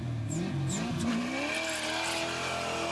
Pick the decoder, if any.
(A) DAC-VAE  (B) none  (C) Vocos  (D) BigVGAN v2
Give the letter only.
B